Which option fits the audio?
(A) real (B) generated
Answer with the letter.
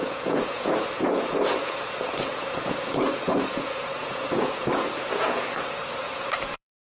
B